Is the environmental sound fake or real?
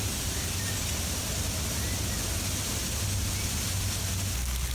real